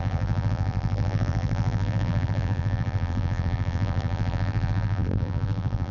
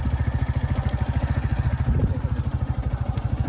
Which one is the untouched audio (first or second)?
second